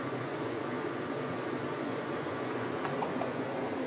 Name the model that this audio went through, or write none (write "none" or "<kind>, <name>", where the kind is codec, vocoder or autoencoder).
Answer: vocoder, Vocos